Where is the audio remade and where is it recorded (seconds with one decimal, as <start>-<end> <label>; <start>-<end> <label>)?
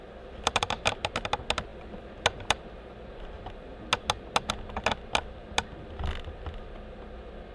0.0-7.5 recorded